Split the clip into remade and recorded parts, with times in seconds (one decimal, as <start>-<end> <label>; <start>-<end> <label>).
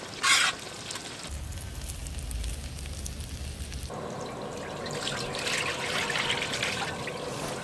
0.0-7.6 recorded